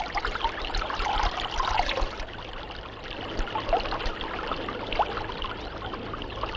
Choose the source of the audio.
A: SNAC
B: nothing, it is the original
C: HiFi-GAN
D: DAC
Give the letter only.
B